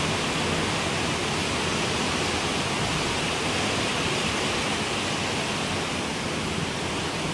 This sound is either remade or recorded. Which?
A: recorded